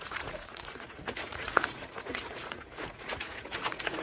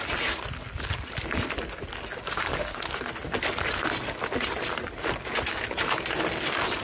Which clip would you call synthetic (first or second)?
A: first